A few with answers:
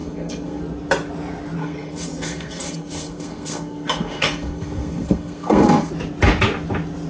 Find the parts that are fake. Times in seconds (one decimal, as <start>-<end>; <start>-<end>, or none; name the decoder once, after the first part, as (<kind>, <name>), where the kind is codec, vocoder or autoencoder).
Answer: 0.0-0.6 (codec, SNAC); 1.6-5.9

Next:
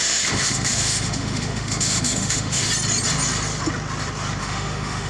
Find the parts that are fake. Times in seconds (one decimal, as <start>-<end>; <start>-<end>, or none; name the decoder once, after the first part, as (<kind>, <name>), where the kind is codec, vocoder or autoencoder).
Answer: 0.0-2.7 (autoencoder, DAC-VAE); 4.4-5.1

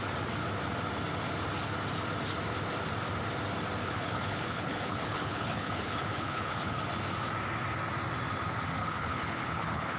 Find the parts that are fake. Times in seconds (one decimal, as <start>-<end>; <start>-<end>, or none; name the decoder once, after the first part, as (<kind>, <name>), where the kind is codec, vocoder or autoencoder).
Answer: 3.8-6.8 (codec, HILCodec); 8.8-10.0

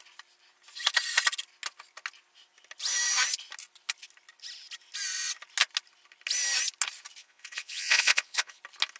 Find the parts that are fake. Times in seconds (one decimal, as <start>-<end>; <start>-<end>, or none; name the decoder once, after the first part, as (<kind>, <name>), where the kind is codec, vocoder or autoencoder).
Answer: 7.2-8.6 (vocoder, Vocos)

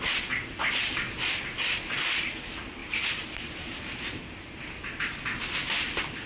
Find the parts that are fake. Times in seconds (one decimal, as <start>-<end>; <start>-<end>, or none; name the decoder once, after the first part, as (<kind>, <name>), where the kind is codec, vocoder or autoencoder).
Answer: none

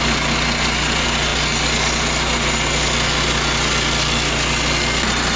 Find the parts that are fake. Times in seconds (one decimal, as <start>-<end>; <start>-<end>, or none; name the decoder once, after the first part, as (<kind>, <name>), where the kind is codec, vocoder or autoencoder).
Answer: none